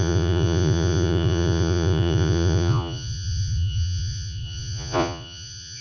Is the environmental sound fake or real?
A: fake